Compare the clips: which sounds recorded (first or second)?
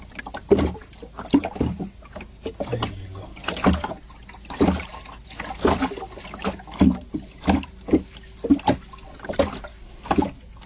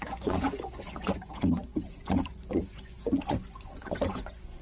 first